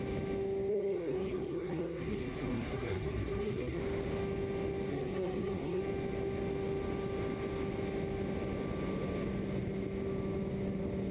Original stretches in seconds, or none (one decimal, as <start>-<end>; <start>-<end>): 0.0-0.7; 3.8-4.9; 5.8-11.1